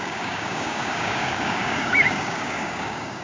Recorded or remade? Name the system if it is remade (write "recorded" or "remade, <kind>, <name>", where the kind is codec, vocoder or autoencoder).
remade, codec, DAC